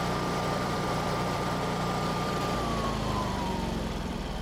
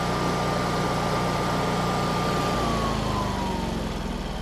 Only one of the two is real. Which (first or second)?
second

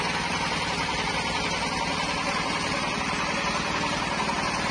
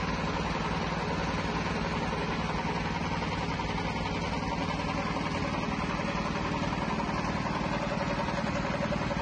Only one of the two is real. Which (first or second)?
second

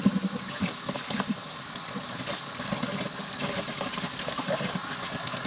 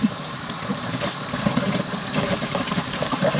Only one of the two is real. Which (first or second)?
first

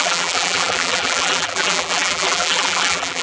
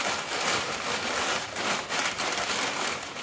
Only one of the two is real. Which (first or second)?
second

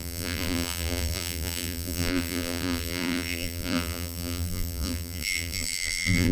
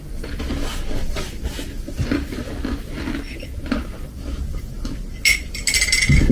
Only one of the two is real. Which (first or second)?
second